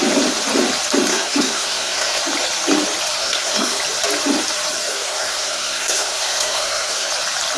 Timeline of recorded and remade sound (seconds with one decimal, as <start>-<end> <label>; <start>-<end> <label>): 0.0-1.1 recorded; 1.1-2.2 remade; 2.2-3.2 recorded; 3.2-3.8 remade; 3.8-4.9 recorded; 4.9-7.1 remade; 7.1-7.6 recorded